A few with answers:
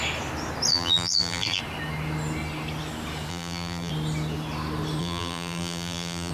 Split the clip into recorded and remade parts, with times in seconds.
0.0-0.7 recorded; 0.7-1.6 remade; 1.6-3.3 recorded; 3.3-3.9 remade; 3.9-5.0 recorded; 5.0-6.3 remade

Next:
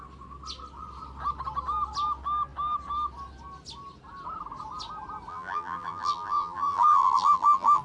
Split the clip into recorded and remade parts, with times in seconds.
0.0-5.3 recorded; 5.3-7.8 remade

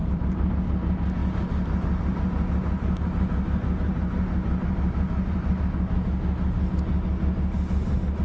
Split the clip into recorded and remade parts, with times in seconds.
0.0-0.5 remade; 0.5-1.2 recorded; 1.2-5.6 remade; 5.6-8.2 recorded